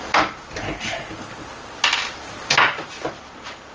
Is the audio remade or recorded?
recorded